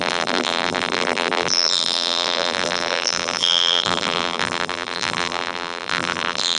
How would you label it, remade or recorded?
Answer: remade